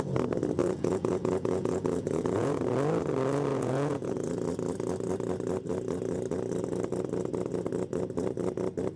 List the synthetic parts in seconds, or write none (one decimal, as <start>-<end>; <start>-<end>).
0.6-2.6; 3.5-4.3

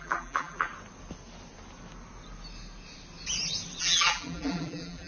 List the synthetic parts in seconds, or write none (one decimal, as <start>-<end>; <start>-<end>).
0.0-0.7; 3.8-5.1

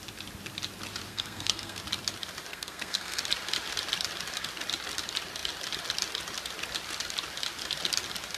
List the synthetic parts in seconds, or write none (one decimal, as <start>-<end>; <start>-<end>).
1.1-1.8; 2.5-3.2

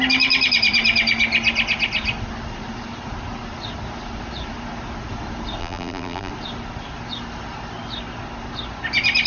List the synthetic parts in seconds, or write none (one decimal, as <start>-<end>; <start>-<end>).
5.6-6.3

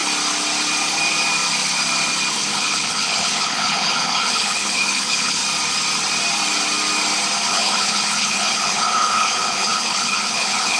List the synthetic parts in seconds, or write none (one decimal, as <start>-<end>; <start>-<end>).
2.3-5.4; 7.5-10.8